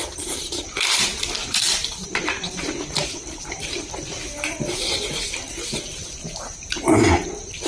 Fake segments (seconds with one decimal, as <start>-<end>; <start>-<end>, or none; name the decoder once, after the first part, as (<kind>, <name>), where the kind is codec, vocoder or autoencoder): 0.0-7.7 (vocoder, BigVGAN v2)